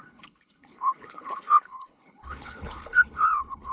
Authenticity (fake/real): fake